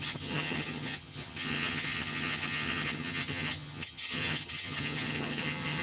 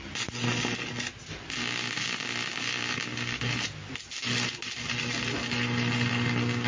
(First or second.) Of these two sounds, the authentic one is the second